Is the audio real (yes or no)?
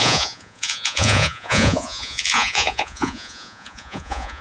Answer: no